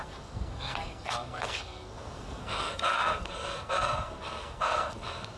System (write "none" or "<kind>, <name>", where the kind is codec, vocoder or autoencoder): codec, SNAC